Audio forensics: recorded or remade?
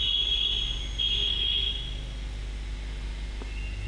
recorded